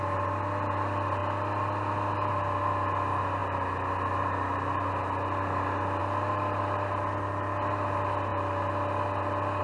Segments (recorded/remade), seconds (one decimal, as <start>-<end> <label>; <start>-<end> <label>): 0.0-9.6 recorded

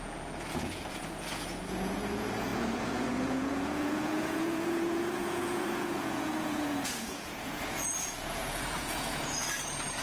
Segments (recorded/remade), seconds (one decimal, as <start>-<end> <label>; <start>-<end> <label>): 0.0-10.0 remade

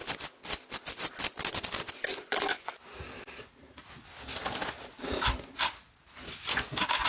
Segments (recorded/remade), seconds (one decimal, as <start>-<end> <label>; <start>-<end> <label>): 0.0-2.1 recorded; 2.1-2.7 remade; 2.7-7.1 recorded